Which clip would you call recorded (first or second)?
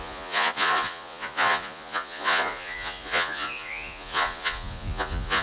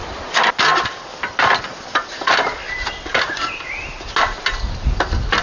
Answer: second